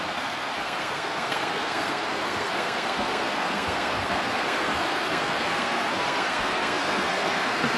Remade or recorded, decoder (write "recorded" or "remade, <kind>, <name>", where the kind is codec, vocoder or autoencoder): remade, codec, SNAC